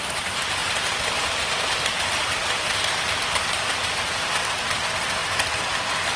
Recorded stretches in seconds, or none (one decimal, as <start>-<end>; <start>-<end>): 0.0-6.2